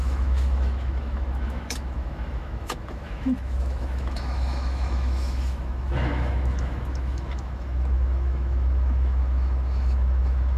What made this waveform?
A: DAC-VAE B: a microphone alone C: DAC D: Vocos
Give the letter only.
A